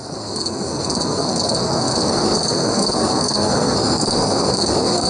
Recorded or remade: remade